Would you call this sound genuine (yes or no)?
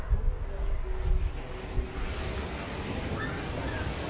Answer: yes